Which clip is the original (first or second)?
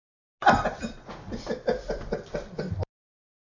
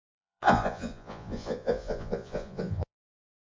first